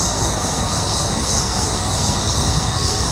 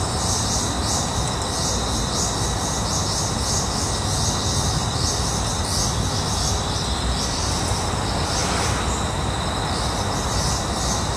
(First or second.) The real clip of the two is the second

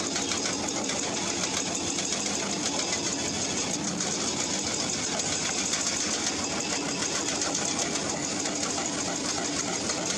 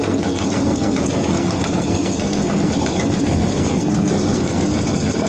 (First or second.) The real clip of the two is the first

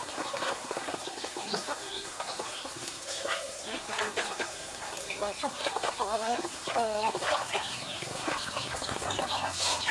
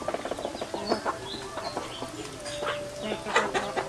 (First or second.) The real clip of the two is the second